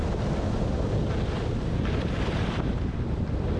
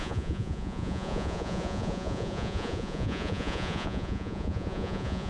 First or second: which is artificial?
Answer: second